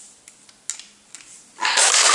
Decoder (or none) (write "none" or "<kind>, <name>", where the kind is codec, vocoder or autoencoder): none